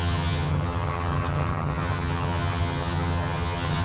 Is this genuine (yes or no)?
no